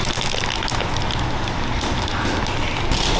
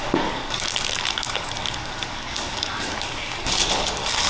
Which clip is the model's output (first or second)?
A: second